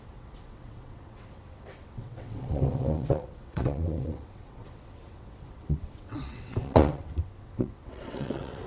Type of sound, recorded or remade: remade